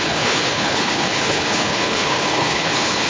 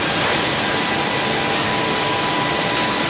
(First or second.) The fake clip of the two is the first